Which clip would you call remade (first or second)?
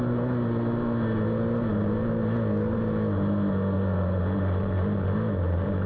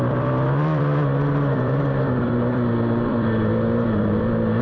second